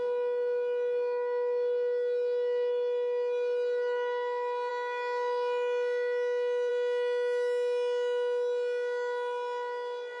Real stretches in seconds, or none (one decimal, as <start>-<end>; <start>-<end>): 0.0-10.2